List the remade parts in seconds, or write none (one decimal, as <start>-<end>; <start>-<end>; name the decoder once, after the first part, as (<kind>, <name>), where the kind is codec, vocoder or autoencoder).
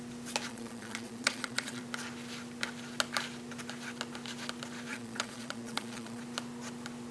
0.5-1.8 (vocoder, Vocos); 4.9-6.2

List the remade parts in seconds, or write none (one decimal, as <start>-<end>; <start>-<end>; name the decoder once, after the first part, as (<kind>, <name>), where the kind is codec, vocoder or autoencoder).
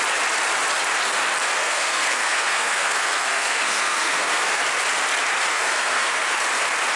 1.6-4.6 (codec, SNAC); 5.5-6.3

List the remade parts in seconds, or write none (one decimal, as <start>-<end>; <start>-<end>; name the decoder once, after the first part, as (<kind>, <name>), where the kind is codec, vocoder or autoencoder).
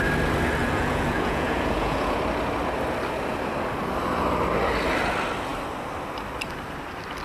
0.6-2.2 (vocoder, Vocos)